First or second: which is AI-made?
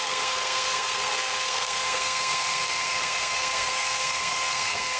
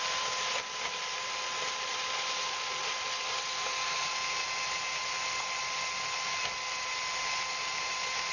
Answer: first